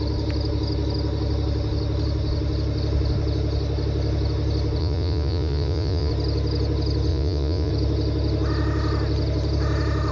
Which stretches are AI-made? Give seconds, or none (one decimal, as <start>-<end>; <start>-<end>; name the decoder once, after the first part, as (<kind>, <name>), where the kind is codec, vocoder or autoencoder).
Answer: 4.8-6.1 (vocoder, Vocos); 7.1-7.7